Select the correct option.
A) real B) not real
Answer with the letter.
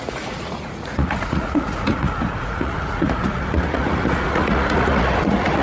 B